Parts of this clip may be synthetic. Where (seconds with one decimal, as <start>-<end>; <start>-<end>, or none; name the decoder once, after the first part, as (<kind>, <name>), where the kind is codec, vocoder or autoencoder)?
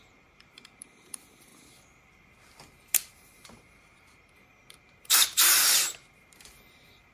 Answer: 0.0-1.5 (vocoder, BigVGAN v2); 3.1-7.1